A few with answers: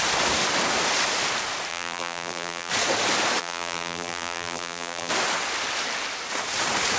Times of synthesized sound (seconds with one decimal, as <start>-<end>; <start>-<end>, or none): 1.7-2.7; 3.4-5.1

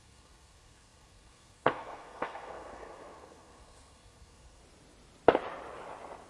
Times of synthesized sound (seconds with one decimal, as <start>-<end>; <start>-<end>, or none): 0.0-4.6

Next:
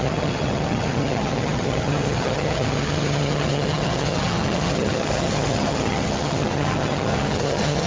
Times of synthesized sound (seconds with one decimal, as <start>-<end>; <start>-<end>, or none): 0.0-7.9

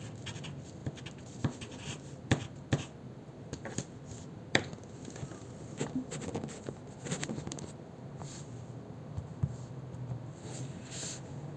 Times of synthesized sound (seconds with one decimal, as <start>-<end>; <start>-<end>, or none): none

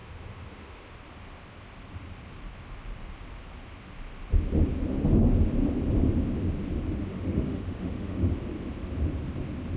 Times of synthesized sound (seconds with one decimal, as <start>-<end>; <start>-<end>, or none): 0.0-0.9; 7.1-8.3

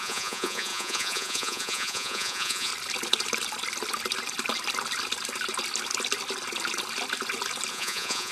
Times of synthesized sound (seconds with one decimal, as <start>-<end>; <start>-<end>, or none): 0.0-2.7; 7.7-8.3

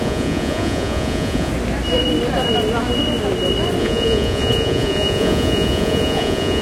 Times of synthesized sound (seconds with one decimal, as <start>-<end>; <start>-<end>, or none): 0.0-1.5; 3.8-6.6

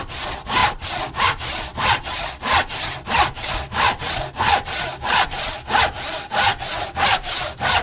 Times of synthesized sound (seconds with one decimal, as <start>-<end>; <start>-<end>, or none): none